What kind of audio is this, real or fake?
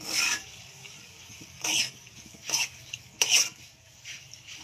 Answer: fake